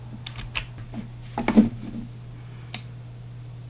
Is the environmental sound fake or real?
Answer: real